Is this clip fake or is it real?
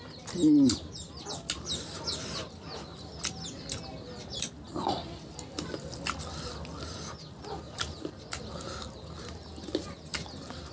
real